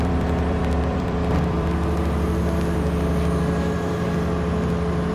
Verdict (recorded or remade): remade